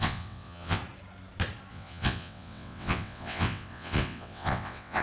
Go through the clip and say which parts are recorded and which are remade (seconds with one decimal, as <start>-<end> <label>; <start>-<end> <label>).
0.0-0.8 remade; 0.8-1.7 recorded; 1.7-5.0 remade